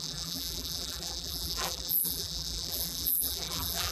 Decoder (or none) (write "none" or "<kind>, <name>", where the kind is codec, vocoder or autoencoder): vocoder, BigVGAN v2